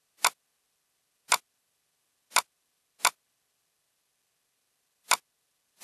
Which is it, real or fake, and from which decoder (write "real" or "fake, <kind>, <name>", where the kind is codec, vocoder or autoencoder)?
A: real